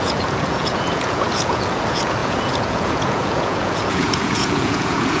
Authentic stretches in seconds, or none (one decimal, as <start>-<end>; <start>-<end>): none